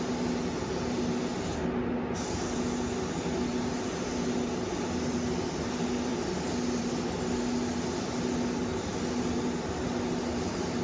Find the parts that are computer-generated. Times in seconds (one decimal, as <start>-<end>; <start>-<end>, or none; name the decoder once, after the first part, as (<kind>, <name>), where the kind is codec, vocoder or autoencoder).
none